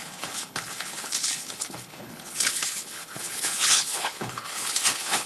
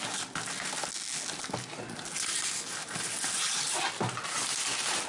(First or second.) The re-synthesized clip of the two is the first